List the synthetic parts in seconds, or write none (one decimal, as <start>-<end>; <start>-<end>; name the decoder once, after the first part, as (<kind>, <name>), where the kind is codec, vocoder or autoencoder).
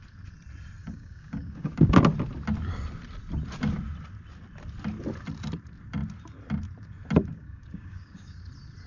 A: 0.8-2.0 (codec, DAC); 7.3-8.4